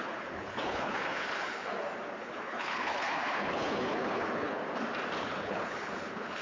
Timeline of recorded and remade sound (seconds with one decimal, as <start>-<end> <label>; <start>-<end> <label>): 0.0-1.7 remade; 1.7-2.2 recorded; 2.2-4.6 remade; 4.6-5.2 recorded; 5.2-6.4 remade